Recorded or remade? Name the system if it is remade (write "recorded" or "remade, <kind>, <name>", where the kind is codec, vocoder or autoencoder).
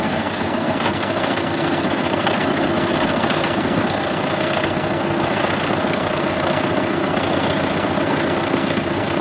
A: remade, codec, SNAC